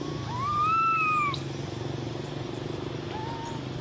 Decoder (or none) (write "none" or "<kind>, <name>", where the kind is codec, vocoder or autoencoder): none